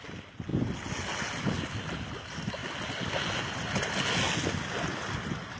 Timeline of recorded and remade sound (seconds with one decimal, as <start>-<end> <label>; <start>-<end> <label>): 0.0-5.6 recorded